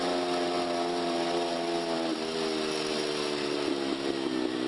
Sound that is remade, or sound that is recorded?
recorded